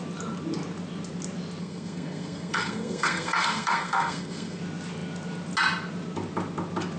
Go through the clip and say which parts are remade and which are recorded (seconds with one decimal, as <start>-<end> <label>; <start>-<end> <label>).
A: 0.0-1.6 recorded; 1.6-4.6 remade; 4.6-7.0 recorded